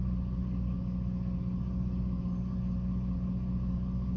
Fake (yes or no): no